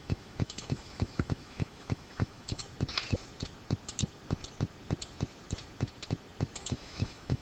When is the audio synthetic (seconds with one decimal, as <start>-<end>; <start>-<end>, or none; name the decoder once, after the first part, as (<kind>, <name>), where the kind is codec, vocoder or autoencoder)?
0.0-2.6 (autoencoder, DAC-VAE); 6.6-7.4

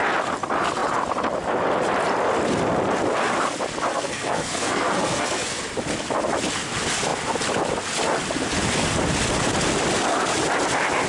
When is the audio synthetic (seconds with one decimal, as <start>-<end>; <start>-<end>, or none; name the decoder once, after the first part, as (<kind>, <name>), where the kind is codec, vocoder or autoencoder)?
3.9-5.6 (codec, SNAC)

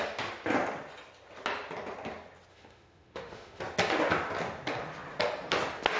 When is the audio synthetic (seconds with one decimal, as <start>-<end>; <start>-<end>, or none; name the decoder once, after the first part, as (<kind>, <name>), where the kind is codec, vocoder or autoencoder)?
2.5-3.6 (autoencoder, DAC-VAE)

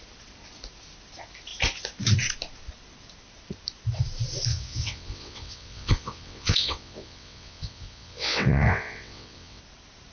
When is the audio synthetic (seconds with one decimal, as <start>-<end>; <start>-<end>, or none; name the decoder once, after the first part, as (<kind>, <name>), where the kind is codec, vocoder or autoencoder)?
4.5-9.6 (vocoder, WaveNeXt)

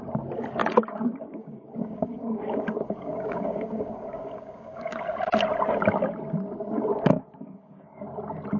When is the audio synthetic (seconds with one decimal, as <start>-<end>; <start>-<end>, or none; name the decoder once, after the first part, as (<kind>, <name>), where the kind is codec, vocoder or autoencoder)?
0.6-5.0 (codec, DAC); 6.9-8.0

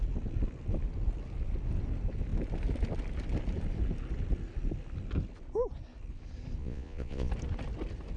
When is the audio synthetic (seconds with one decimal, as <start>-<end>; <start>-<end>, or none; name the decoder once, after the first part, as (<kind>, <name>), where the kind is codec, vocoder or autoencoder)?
6.6-7.3 (vocoder, Vocos)

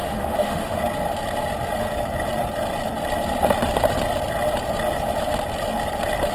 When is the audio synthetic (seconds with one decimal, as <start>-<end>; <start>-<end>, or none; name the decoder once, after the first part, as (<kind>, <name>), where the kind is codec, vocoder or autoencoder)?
0.0-0.8 (autoencoder, DAC-VAE)